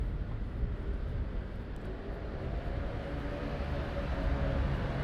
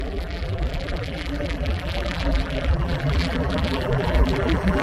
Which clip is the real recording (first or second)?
first